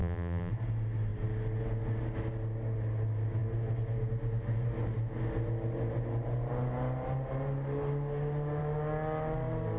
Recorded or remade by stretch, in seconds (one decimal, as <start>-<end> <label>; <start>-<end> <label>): 0.0-0.5 remade; 0.5-9.8 recorded